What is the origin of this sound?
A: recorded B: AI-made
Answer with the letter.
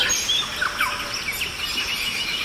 A